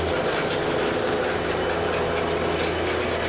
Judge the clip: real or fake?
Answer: real